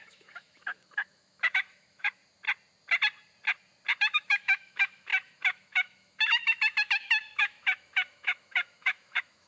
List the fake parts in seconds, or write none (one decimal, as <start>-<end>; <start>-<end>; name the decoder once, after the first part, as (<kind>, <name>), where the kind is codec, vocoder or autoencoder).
0.0-2.2 (autoencoder, DAC-VAE); 4.0-9.5